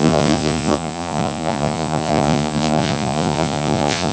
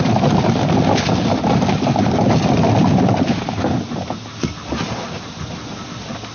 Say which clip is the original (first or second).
second